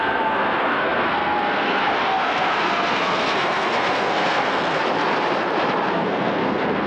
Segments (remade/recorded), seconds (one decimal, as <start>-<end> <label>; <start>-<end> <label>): 0.0-4.8 remade; 4.8-5.9 recorded; 5.9-6.9 remade